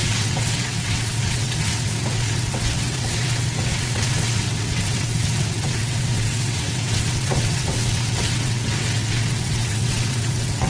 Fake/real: fake